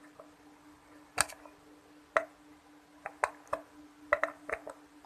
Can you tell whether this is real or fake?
real